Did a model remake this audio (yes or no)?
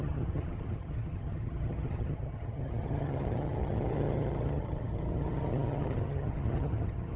yes